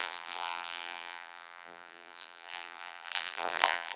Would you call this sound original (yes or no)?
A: no